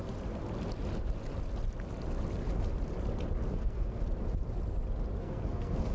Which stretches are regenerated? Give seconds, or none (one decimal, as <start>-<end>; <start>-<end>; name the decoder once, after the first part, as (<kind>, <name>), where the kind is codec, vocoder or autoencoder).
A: 3.5-4.0 (codec, SNAC); 5.2-5.9